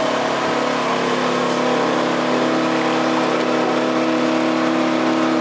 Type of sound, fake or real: real